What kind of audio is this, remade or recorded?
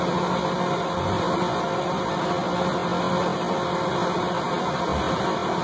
recorded